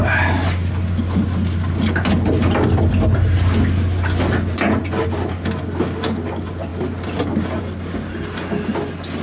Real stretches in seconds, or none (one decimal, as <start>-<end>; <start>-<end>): 0.0-9.2